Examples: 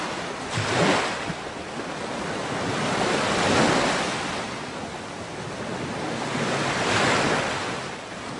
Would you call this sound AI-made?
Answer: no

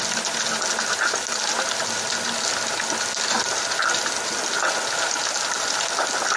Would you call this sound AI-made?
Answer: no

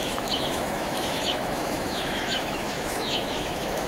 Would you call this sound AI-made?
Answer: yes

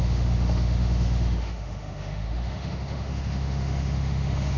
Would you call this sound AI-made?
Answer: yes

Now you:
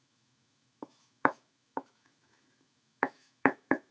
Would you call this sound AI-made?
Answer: yes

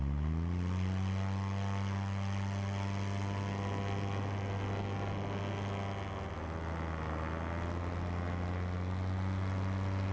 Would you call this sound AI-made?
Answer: no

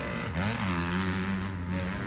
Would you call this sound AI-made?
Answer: no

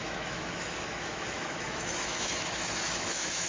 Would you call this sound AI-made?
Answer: yes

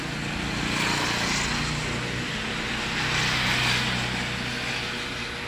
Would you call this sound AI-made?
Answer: no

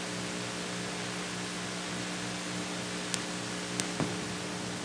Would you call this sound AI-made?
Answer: no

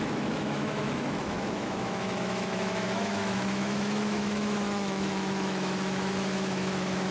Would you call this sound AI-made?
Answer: yes